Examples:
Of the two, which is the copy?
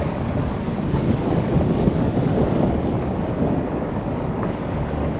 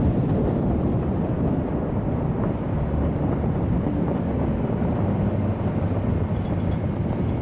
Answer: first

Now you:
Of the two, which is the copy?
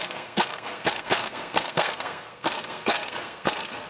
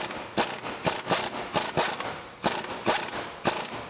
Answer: first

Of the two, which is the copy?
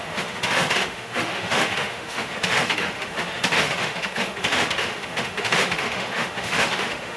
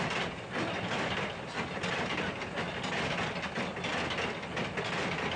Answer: first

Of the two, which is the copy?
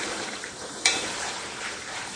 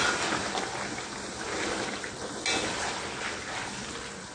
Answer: first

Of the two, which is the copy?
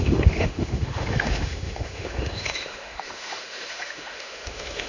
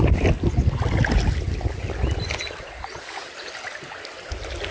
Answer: first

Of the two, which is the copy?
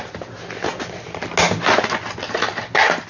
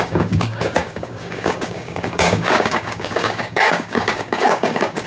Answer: second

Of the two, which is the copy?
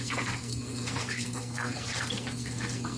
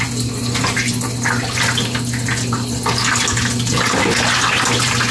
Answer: first